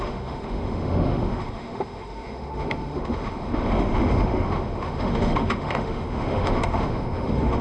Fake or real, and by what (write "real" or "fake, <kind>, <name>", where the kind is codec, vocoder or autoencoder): fake, autoencoder, DAC-VAE